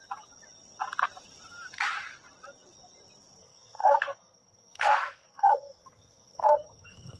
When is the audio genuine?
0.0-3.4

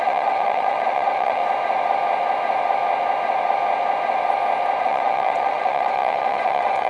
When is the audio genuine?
1.4-4.8

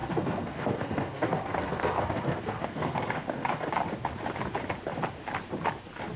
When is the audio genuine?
3.7-6.2

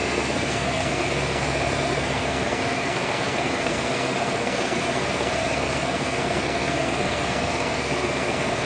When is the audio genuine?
none